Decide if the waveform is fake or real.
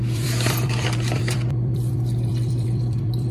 fake